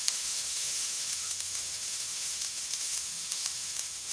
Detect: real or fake fake